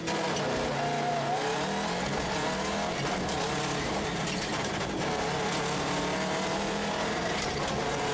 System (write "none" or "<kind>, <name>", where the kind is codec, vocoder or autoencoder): none